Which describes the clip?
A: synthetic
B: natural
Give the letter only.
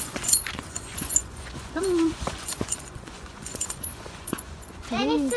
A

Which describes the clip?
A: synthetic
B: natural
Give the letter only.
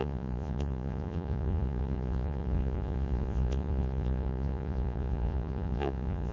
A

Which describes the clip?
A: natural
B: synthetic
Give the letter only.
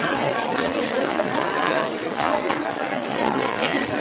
B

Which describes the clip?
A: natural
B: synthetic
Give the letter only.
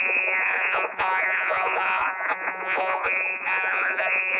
B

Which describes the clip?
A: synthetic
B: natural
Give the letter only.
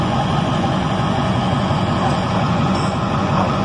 A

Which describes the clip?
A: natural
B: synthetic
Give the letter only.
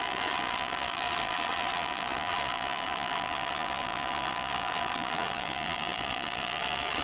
B